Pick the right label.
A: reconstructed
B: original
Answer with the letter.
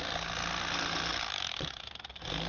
B